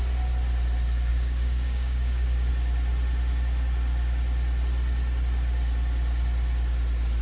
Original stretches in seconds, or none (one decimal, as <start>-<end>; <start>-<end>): 0.0-1.1; 2.5-7.2